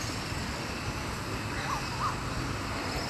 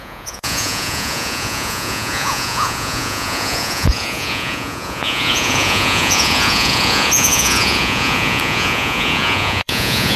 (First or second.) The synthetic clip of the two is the second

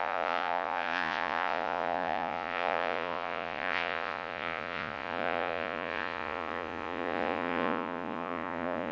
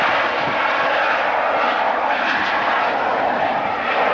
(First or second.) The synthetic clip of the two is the first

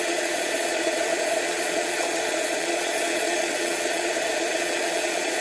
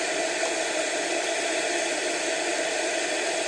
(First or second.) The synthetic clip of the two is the first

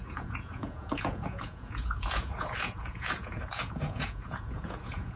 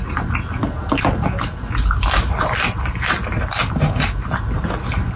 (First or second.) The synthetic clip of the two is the first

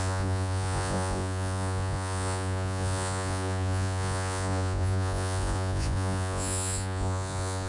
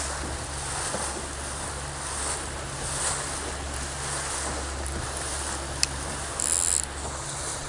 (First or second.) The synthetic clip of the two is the first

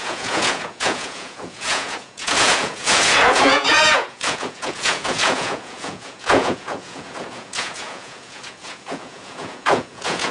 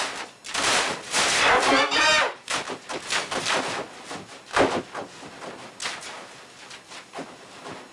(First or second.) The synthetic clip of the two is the first